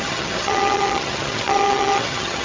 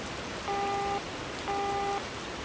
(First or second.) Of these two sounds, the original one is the second